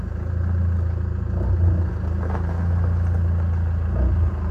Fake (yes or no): no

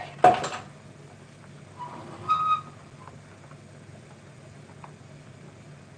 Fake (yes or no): no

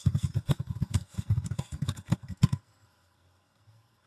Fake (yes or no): yes